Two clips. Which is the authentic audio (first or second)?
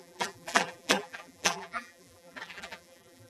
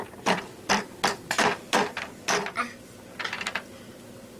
second